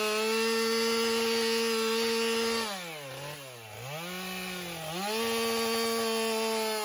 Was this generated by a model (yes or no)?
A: no